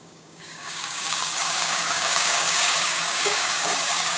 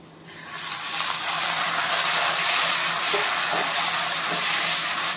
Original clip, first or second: second